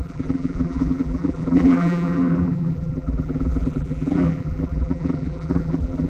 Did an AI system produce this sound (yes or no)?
yes